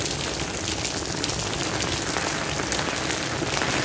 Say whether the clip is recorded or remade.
recorded